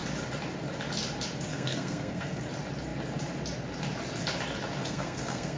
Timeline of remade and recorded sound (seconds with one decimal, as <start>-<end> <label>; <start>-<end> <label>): 0.0-1.5 recorded; 1.5-2.4 remade; 2.4-4.8 recorded; 4.8-5.6 remade